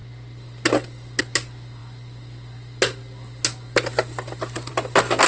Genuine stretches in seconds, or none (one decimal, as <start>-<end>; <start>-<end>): 0.0-5.3